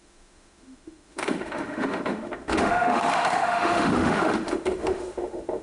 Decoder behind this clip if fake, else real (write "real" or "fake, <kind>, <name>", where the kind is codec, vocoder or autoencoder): fake, autoencoder, DAC-VAE